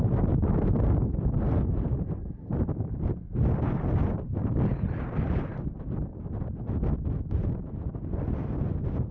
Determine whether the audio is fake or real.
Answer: real